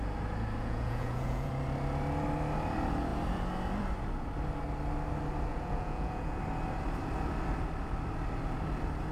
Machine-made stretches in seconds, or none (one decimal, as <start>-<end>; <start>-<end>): 0.6-1.5; 5.5-6.4